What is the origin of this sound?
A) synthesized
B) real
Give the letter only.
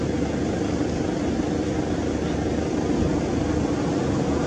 B